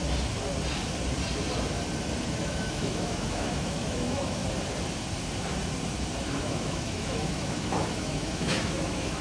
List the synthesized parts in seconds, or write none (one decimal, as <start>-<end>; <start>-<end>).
2.4-4.4; 6.4-9.2